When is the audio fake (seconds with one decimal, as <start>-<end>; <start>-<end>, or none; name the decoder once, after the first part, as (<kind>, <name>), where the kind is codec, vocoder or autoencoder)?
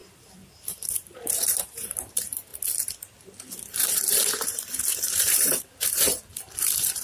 0.0-2.5 (vocoder, BigVGAN v2); 3.7-7.0